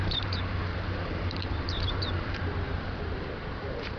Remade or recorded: remade